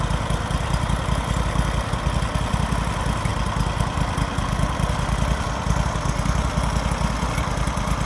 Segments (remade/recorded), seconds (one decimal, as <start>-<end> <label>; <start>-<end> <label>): 0.0-8.1 recorded